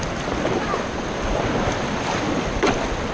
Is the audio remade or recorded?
recorded